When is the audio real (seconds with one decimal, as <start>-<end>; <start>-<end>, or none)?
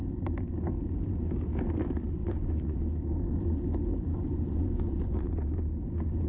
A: 0.0-2.2; 2.8-4.1; 5.3-6.3